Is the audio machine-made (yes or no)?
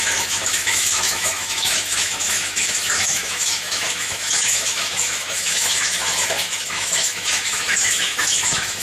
yes